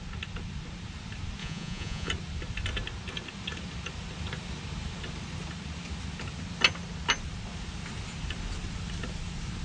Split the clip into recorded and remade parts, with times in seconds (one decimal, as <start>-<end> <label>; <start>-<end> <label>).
0.0-1.4 recorded; 1.4-2.1 remade; 2.1-9.6 recorded